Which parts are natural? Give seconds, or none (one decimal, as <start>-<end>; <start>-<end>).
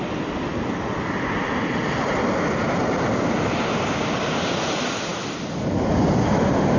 0.0-6.8